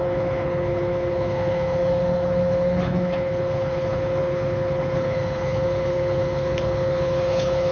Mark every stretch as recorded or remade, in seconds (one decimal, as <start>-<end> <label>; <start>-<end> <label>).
0.0-7.7 remade